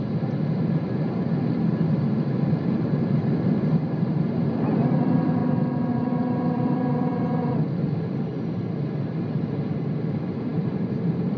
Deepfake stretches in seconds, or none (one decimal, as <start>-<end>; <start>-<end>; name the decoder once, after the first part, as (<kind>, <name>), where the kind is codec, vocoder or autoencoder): 0.0-5.4 (vocoder, BigVGAN v2); 5.9-11.4